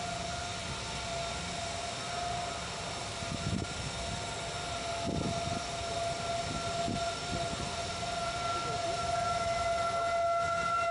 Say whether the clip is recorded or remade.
recorded